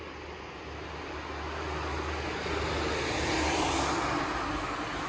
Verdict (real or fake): real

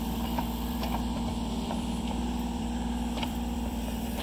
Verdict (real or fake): fake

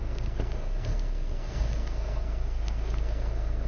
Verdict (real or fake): fake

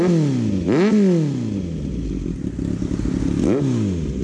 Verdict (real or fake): real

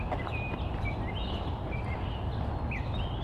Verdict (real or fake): real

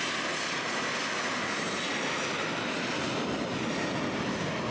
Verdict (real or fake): real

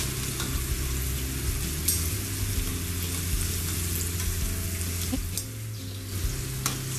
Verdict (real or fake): real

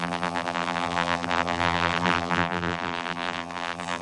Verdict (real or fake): fake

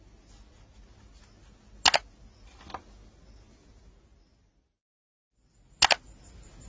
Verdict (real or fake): real